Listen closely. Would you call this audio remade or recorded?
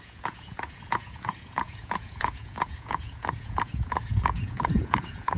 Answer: remade